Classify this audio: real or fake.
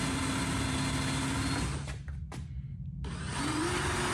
real